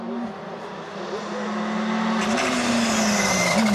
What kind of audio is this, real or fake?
real